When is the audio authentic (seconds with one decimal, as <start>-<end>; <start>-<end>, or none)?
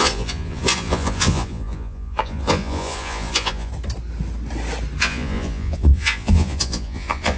3.7-5.0